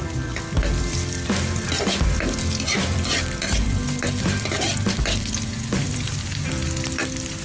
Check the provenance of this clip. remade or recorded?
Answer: remade